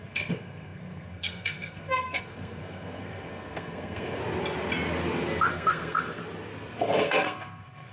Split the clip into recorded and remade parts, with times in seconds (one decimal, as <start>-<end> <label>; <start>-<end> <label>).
0.0-4.2 remade; 4.2-5.5 recorded; 5.5-6.2 remade; 6.2-6.8 recorded; 6.8-7.9 remade